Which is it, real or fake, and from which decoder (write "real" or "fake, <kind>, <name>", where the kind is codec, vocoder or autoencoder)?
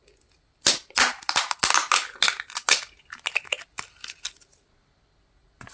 real